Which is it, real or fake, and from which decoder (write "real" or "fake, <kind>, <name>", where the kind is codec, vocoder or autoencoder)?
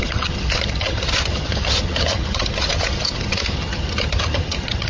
fake, vocoder, HiFi-GAN